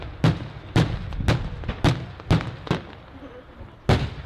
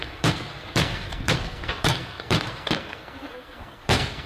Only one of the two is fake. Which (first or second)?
second